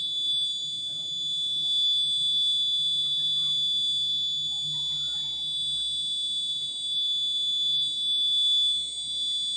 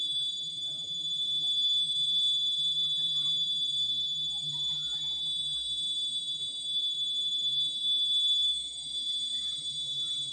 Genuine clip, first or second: first